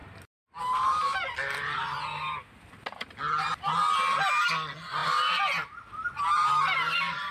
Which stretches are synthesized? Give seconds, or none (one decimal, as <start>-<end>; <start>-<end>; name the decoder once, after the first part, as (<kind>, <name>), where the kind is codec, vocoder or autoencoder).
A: none